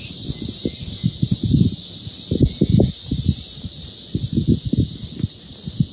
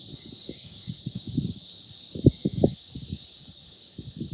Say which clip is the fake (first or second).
second